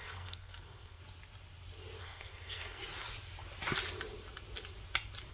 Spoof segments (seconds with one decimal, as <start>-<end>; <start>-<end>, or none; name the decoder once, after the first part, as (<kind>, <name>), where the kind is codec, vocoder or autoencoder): 0.0-1.0 (codec, SNAC); 2.0-2.8

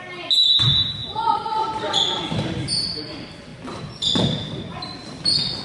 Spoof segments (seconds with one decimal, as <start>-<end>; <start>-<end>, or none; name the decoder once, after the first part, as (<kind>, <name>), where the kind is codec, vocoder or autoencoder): none